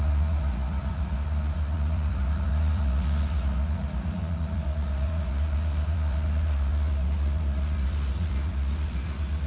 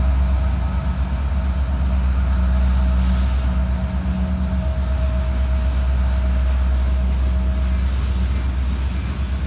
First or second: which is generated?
first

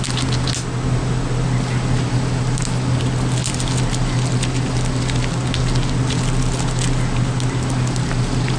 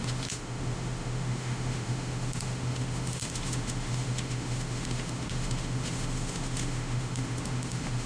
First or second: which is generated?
second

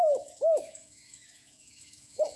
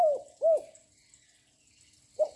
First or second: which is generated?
first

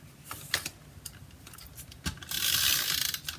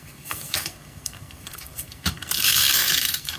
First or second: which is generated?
second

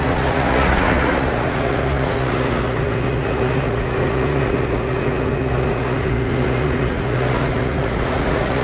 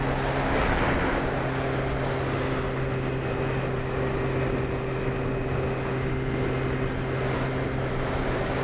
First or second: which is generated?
first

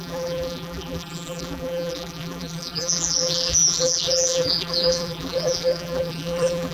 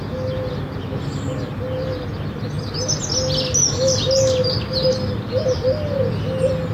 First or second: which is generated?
first